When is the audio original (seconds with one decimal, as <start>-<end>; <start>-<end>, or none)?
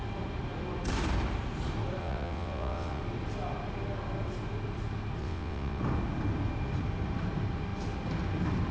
0.0-2.0; 3.0-5.2; 5.8-8.7